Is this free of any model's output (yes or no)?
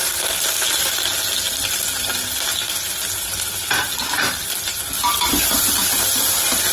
yes